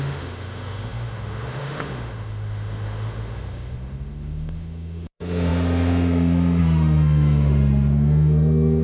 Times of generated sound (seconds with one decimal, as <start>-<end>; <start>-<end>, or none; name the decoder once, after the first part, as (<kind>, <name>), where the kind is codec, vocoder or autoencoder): 0.0-8.8 (autoencoder, DAC-VAE)